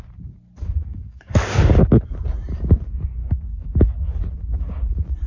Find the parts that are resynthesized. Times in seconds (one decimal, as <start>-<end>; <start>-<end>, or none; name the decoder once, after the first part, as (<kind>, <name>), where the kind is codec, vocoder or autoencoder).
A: 0.9-1.8 (codec, DAC); 3.2-4.2